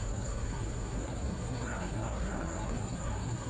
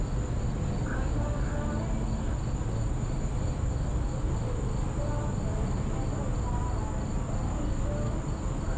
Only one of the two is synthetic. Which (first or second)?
first